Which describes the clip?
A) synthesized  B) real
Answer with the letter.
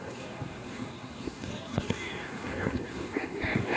A